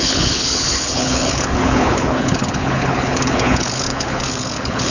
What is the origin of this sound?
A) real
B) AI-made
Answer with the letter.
B